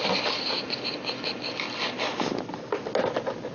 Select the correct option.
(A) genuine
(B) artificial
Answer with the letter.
A